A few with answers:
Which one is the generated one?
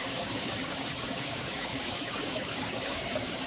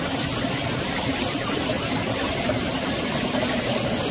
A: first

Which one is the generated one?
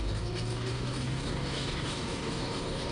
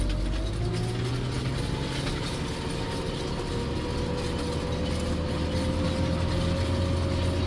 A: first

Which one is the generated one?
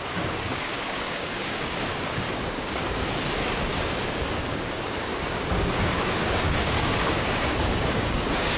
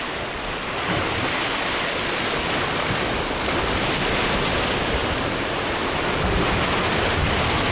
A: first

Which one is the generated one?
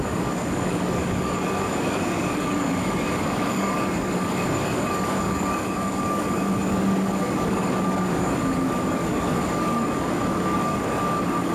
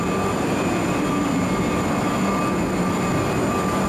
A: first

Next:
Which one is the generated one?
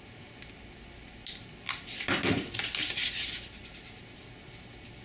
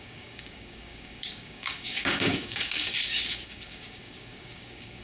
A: second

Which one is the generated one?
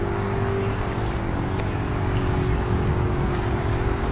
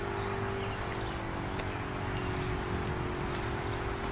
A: first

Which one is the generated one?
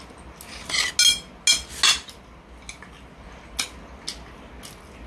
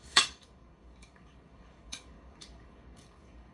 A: second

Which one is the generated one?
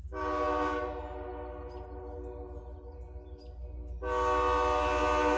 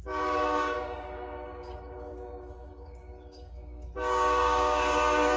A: second